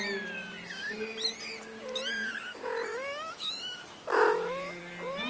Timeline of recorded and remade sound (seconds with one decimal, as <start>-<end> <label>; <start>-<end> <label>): 0.0-2.9 recorded; 2.9-4.8 remade; 4.8-5.3 recorded